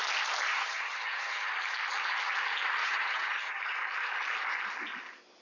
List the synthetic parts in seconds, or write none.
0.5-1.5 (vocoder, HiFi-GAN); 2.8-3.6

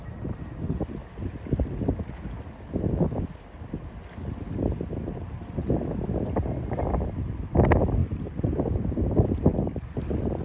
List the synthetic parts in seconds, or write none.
none

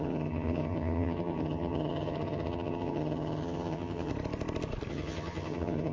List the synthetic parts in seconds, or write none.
0.0-4.1 (vocoder, HiFi-GAN); 4.9-5.9

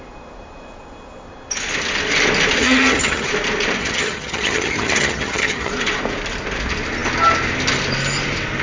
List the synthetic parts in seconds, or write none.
2.6-3.3 (vocoder, HiFi-GAN); 3.8-5.7

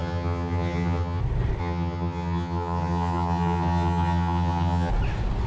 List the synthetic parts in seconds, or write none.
0.0-1.2 (vocoder, HiFi-GAN); 1.6-4.9

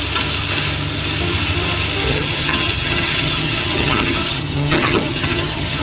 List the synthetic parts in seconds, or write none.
2.1-5.8 (vocoder, HiFi-GAN)